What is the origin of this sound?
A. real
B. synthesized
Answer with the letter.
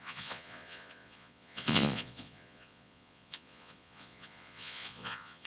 B